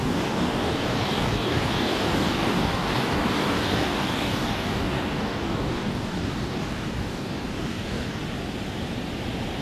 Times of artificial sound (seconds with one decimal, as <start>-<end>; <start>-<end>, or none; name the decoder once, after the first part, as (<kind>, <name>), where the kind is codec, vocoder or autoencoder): 0.0-8.2 (codec, DAC)